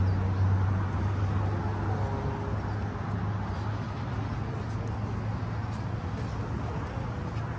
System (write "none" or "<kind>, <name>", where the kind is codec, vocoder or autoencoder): none